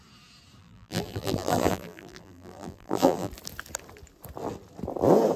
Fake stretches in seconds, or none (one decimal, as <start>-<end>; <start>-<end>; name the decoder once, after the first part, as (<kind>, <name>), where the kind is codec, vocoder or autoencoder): 0.6-3.3 (vocoder, BigVGAN v2)